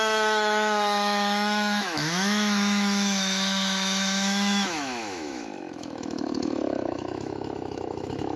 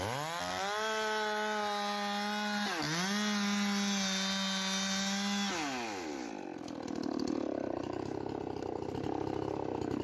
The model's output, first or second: first